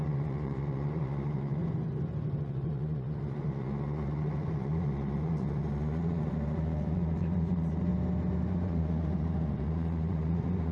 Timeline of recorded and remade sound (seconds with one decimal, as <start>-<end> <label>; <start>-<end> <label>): 0.0-1.6 remade; 1.6-2.4 recorded; 2.4-7.9 remade; 7.9-8.5 recorded; 8.5-10.7 remade